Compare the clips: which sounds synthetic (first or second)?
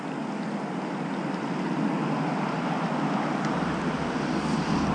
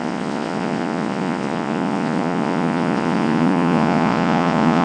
second